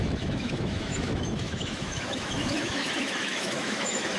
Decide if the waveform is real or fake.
fake